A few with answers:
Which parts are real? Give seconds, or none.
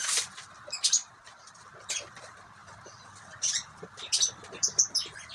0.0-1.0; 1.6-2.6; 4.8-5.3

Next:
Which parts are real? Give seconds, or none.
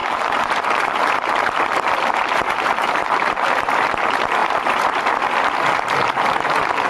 0.6-2.4; 3.8-4.4; 5.0-6.9